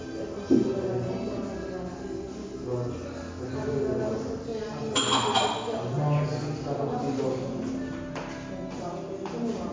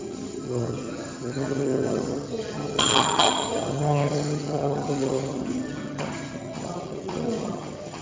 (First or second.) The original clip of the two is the first